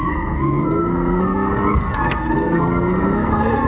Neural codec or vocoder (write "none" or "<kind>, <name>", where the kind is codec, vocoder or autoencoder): codec, SNAC